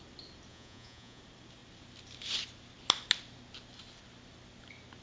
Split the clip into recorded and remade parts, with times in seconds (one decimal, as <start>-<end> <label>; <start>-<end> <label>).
0.0-0.5 recorded; 0.5-1.2 remade; 1.2-5.0 recorded